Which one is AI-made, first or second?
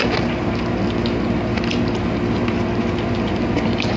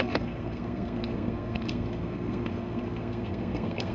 second